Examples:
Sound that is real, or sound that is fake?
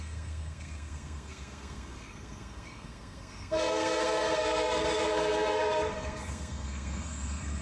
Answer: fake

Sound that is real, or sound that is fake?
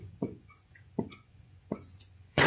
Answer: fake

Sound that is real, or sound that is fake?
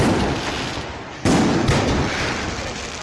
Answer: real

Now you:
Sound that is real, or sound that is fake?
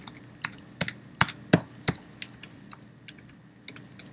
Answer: real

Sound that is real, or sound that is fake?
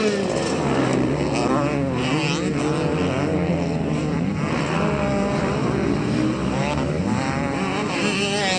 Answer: real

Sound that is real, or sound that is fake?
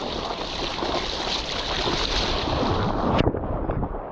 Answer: real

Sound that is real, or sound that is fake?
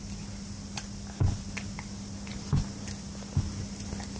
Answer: real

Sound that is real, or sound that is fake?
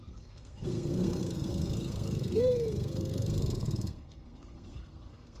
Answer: fake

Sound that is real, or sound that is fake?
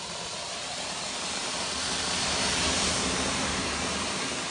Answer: fake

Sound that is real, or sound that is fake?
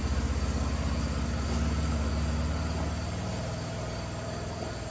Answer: real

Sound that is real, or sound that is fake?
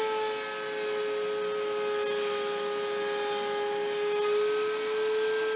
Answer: real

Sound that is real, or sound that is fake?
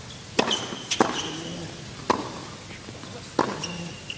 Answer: real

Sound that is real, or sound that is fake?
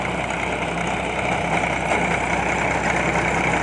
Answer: real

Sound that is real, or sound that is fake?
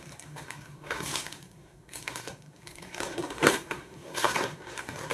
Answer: fake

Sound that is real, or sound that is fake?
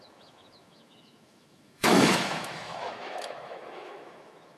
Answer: fake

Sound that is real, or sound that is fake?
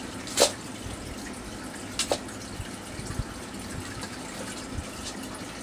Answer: real